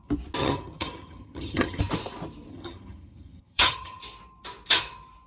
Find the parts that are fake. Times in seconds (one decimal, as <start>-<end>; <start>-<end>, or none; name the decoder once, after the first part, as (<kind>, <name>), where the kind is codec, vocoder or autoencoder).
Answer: 0.4-1.8 (vocoder, HiFi-GAN); 2.5-4.0